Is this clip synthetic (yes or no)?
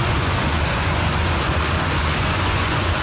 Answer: yes